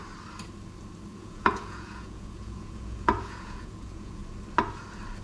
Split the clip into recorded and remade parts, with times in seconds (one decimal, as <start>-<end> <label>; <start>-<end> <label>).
0.0-1.1 recorded; 1.1-4.2 remade; 4.2-5.2 recorded